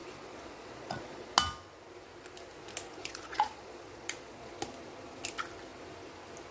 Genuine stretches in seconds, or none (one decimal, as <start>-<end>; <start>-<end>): 1.3-3.0; 4.5-6.5